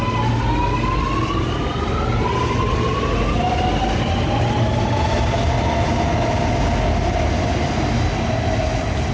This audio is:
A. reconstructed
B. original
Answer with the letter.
B